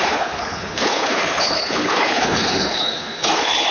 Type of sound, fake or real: fake